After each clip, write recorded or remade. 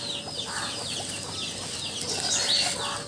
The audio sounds recorded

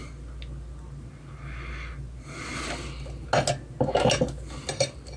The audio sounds recorded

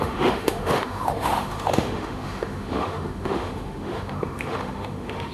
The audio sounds remade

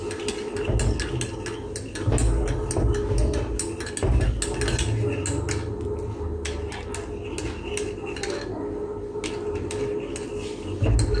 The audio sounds recorded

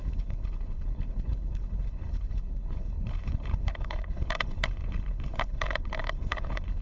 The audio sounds remade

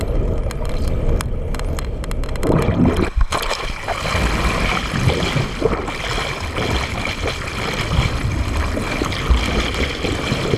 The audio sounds recorded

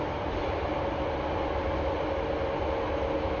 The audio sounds recorded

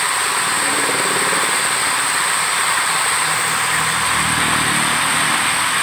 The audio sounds recorded